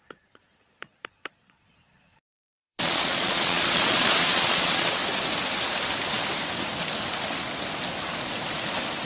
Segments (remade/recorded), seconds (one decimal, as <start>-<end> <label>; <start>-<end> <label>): 0.0-5.0 remade; 5.0-9.1 recorded